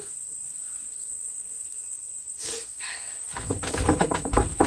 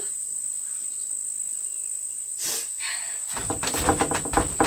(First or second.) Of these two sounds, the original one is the second